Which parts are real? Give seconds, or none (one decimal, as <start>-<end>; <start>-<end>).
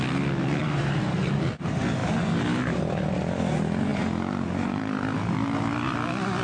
0.0-0.6; 1.3-6.4